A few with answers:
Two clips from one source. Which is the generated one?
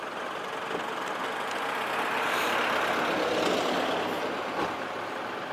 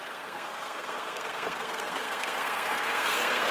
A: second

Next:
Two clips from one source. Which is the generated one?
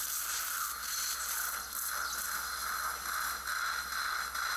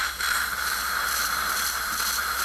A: second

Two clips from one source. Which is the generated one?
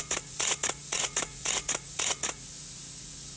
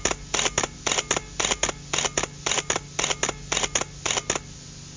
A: first